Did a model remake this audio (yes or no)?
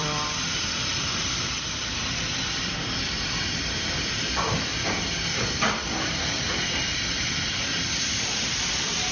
yes